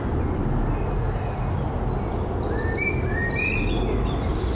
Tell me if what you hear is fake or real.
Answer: real